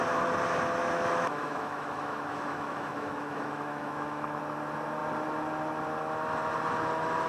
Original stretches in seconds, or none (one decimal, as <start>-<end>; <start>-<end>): 0.0-0.8; 4.4-7.3